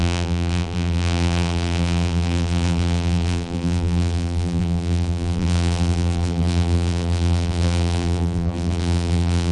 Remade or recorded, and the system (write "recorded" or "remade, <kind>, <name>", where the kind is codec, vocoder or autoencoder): remade, vocoder, BigVGAN v2